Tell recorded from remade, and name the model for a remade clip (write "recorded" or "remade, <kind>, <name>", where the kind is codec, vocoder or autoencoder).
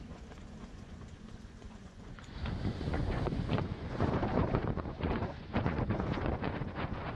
remade, vocoder, Vocos